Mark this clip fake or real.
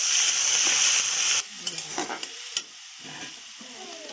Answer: real